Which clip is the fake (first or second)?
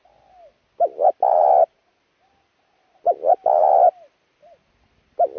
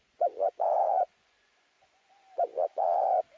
second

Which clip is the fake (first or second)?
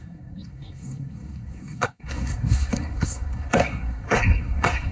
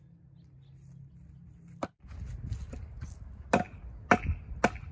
first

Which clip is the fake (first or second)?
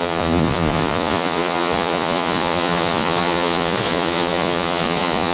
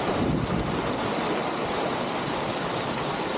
first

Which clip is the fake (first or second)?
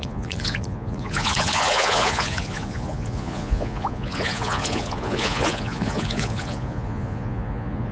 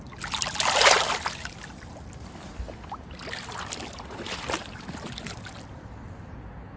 first